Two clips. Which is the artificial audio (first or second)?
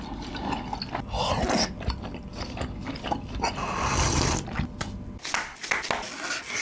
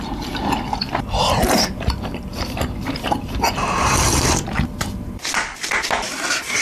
second